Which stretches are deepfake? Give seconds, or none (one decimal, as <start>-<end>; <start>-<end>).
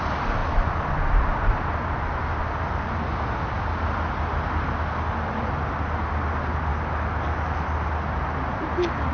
none